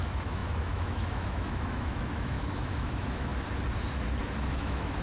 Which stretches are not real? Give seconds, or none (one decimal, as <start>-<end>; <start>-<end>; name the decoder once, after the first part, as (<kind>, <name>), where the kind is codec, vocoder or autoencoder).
0.0-3.3 (autoencoder, DAC-VAE); 4.4-5.0